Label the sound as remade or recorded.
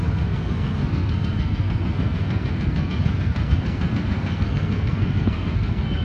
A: remade